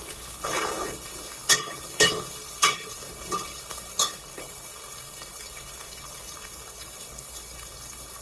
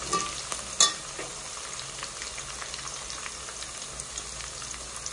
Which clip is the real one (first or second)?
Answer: second